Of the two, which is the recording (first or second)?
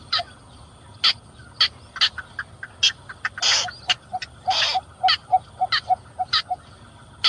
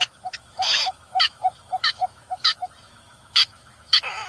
first